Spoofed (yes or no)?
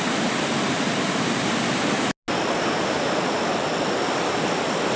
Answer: no